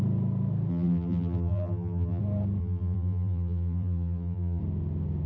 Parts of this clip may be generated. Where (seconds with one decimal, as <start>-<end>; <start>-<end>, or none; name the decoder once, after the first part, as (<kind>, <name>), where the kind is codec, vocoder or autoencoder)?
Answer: 0.7-2.2 (vocoder, BigVGAN v2); 2.6-4.6